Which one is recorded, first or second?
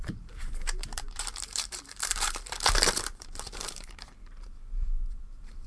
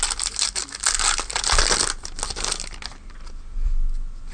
second